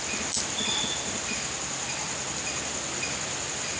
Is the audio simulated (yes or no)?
no